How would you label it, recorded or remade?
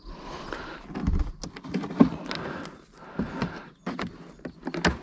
recorded